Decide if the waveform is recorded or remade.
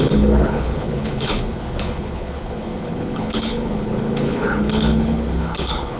remade